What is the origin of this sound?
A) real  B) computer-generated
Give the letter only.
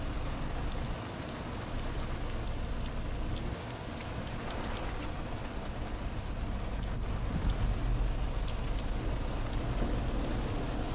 A